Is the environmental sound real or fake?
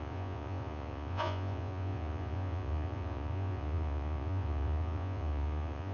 fake